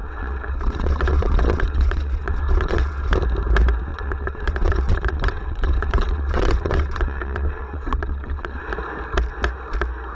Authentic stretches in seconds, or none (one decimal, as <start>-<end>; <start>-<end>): 3.1-3.9; 8.6-10.1